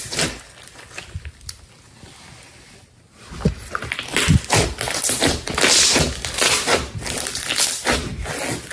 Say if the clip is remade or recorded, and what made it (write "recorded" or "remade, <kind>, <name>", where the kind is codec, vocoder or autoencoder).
recorded